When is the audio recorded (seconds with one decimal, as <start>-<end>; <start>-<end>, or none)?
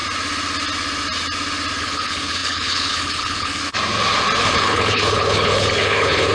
0.0-1.8; 3.6-4.4